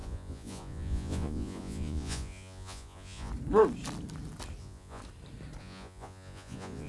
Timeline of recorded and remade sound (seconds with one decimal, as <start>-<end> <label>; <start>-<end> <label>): 0.0-3.3 remade; 3.3-4.6 recorded; 4.6-5.0 remade; 5.0-5.6 recorded; 5.6-6.9 remade